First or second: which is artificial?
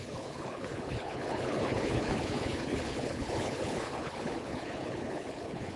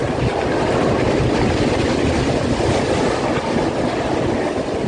first